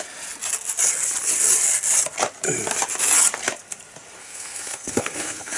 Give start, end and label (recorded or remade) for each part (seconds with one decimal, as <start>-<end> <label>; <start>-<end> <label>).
0.0-4.2 recorded; 4.2-5.6 remade